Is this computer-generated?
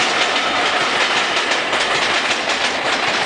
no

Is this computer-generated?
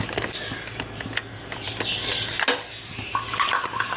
no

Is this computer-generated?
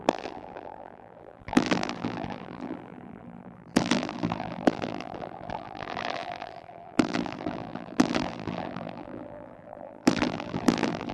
yes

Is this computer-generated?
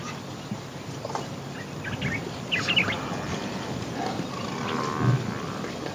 no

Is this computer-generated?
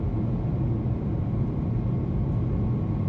yes